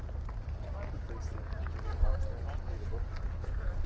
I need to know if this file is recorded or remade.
recorded